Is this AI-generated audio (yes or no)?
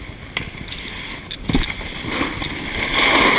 no